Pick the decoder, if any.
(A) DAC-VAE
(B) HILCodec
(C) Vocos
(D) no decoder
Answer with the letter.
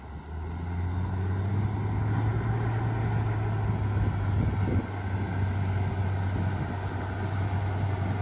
D